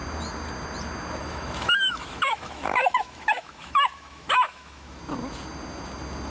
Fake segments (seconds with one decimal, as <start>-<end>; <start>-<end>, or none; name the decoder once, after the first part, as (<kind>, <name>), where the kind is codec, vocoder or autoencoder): 1.2-5.0 (autoencoder, DAC-VAE)